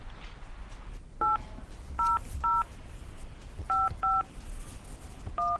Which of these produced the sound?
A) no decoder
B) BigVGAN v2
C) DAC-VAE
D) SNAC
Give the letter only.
A